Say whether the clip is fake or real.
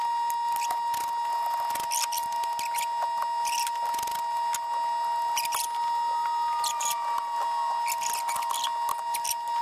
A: real